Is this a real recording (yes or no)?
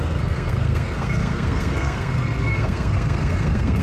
no